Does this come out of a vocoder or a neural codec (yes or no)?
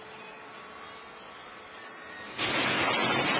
no